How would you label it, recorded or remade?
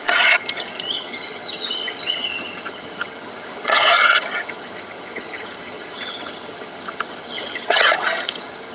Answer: remade